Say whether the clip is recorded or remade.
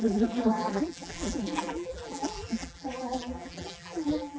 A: remade